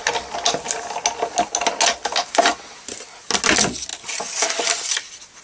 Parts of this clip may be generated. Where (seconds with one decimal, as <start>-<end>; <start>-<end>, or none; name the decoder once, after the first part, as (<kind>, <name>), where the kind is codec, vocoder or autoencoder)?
none